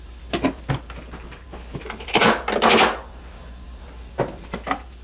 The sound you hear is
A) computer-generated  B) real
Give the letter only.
B